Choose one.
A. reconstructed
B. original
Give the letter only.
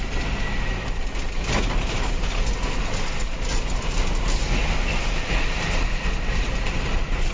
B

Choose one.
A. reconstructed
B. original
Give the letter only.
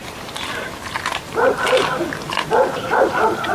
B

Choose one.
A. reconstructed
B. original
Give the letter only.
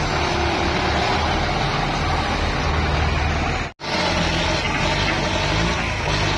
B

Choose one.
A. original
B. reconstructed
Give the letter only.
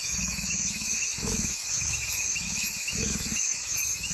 B